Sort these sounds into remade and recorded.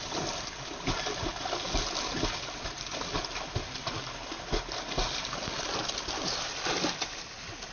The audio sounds recorded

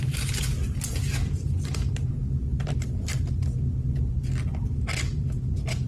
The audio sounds recorded